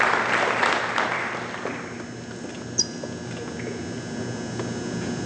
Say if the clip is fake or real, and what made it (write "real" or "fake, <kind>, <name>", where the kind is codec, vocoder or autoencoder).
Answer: real